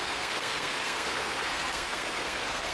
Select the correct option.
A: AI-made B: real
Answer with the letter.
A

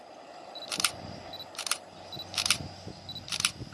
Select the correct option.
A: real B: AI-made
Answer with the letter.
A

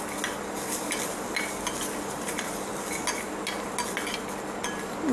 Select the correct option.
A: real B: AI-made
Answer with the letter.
A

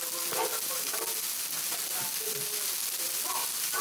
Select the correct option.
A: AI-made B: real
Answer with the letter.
B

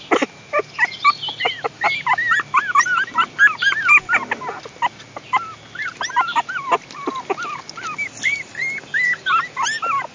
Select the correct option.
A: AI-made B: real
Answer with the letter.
B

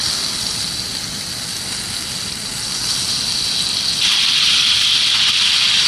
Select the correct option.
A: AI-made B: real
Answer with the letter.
B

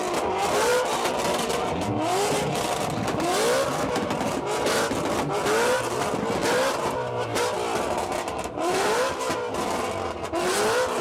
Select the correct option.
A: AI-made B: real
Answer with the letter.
B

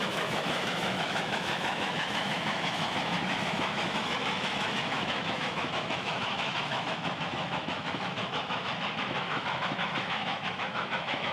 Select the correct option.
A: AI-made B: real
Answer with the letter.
A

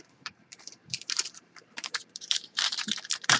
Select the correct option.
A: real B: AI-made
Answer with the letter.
B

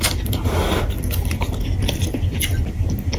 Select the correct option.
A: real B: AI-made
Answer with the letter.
A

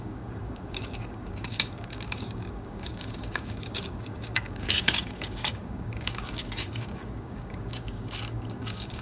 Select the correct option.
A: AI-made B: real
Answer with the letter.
A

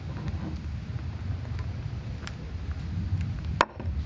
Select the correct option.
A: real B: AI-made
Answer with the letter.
A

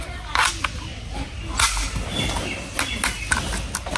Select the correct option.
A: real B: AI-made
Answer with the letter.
A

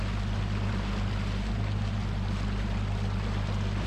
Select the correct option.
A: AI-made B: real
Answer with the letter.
B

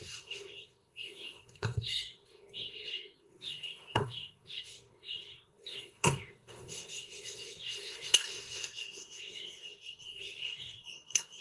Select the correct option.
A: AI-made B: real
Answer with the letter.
A